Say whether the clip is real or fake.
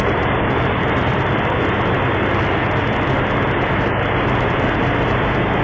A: fake